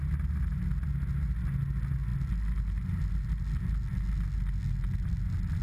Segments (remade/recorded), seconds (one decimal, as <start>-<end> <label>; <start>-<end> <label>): 0.0-5.6 recorded